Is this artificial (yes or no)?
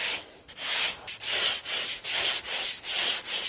no